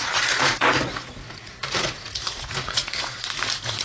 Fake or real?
fake